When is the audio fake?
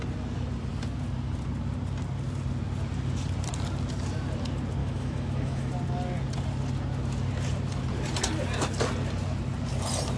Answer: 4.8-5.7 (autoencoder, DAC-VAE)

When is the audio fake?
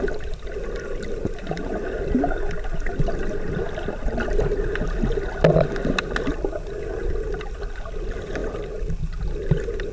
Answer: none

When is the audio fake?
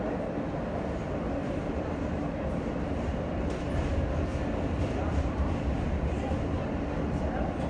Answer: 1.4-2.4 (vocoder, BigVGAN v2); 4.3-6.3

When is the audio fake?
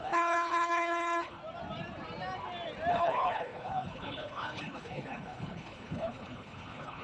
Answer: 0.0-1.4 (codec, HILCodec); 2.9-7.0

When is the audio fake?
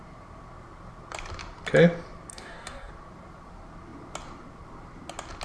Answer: 2.3-2.9 (codec, DAC)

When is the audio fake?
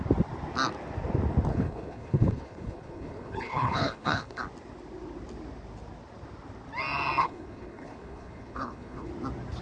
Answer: 1.5-4.4 (codec, HILCodec); 7.2-9.1